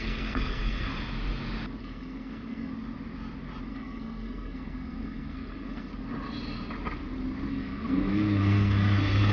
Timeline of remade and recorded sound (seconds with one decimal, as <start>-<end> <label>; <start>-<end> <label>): 0.0-0.9 remade; 0.9-1.8 recorded; 1.8-2.7 remade; 2.7-3.7 recorded; 3.7-5.9 remade; 5.9-7.5 recorded; 7.5-9.3 remade